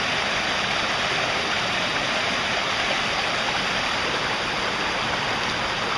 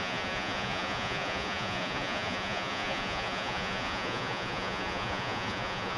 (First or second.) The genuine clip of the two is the first